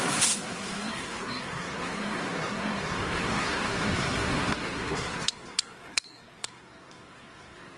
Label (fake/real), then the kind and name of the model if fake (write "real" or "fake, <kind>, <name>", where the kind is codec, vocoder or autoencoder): fake, codec, SNAC